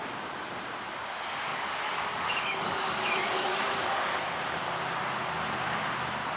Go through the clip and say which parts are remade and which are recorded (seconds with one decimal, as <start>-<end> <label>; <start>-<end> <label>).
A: 0.0-1.5 recorded; 1.5-3.9 remade; 3.9-6.4 recorded

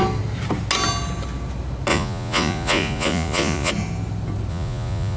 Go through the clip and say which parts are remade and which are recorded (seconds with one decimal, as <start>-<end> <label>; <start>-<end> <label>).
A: 0.0-1.9 recorded; 1.9-3.7 remade; 3.7-4.5 recorded; 4.5-5.2 remade

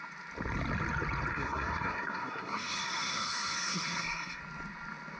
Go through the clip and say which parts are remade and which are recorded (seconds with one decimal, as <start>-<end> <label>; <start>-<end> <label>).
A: 0.0-1.3 recorded; 1.3-4.4 remade; 4.4-5.2 recorded

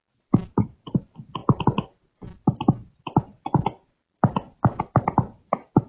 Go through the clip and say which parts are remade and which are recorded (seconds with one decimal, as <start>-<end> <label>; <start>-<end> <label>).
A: 0.0-5.9 recorded

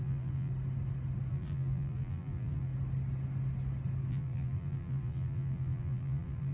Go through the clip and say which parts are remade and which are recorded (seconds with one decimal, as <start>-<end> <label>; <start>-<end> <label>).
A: 0.0-0.5 remade; 0.5-1.3 recorded; 1.3-2.7 remade; 2.7-4.1 recorded; 4.1-6.5 remade

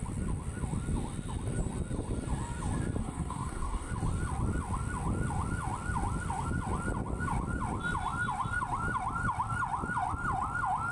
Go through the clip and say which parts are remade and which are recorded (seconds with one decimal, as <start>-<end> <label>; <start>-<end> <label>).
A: 0.0-3.0 recorded; 3.0-3.9 remade; 3.9-10.9 recorded

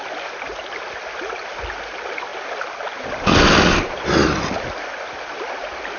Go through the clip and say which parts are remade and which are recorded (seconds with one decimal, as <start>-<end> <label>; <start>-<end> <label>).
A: 0.0-6.0 recorded